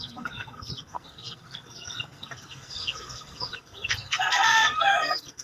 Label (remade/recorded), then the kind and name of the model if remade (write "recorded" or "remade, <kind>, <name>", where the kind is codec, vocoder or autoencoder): remade, codec, SNAC